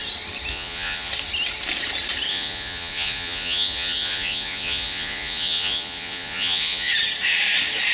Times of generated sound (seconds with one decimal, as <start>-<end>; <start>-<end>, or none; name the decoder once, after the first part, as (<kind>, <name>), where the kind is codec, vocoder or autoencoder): 0.5-1.1 (vocoder, Vocos); 2.3-6.9